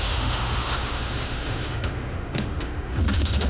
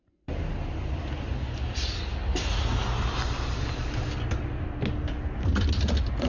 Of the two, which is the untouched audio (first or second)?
second